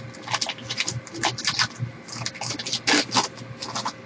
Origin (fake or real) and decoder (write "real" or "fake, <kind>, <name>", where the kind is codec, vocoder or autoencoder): real